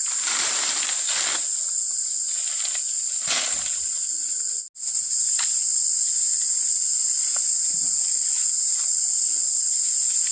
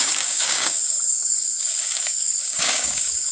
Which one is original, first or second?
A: first